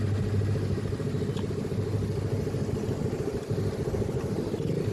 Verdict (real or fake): real